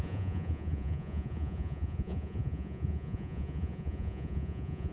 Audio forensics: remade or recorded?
remade